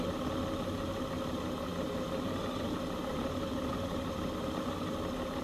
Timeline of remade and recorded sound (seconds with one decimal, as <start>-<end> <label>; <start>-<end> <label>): 0.0-5.4 recorded